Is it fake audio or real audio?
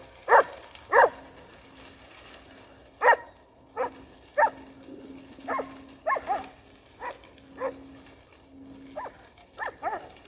real